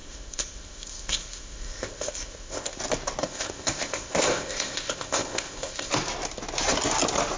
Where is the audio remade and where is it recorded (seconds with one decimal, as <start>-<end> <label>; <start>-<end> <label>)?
0.0-2.8 remade; 2.8-3.2 recorded; 3.2-5.9 remade; 5.9-7.4 recorded